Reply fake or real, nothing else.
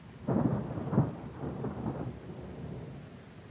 real